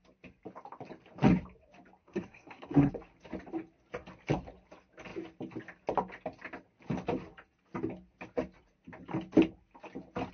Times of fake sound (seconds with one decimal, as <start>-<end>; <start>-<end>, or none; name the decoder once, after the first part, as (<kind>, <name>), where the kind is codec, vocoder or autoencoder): 2.0-2.9 (codec, SNAC)